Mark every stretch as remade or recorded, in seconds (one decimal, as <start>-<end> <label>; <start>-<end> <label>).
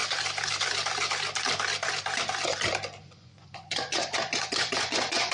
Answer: 0.0-3.0 recorded; 3.0-5.3 remade